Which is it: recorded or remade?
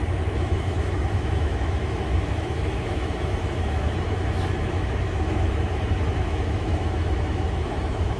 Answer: remade